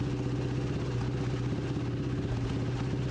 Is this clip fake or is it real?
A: real